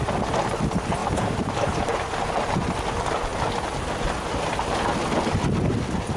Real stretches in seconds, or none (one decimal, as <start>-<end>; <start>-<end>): 0.0-1.0; 2.2-6.2